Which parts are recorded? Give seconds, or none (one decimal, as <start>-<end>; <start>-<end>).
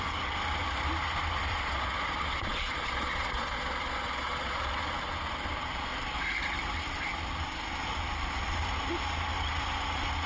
0.0-1.5; 4.9-10.3